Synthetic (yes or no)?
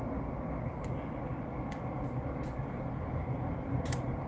no